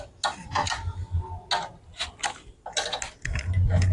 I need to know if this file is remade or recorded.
recorded